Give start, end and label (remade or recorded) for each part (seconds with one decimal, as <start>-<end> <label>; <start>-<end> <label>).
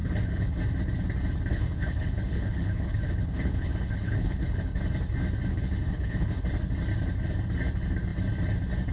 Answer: 0.0-0.6 remade; 0.6-1.5 recorded; 1.5-4.8 remade; 4.8-5.5 recorded; 5.5-6.4 remade; 6.4-8.9 recorded